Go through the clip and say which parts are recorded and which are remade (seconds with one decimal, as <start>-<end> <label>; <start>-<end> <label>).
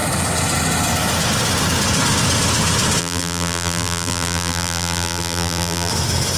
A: 0.0-3.0 recorded; 3.0-5.9 remade; 5.9-6.4 recorded